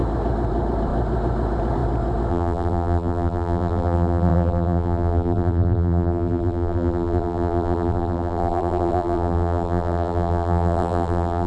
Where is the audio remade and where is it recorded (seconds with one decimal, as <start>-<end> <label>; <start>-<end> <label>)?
0.0-2.3 recorded; 2.3-11.5 remade